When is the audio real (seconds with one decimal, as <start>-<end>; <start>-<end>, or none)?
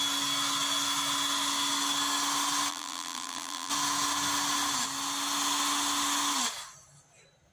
0.0-2.7; 3.7-7.5